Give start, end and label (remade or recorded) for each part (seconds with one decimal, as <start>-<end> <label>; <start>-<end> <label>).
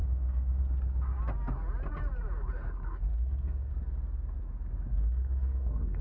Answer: 0.0-0.6 remade; 0.6-3.1 recorded; 3.1-3.7 remade; 3.7-4.9 recorded; 4.9-6.0 remade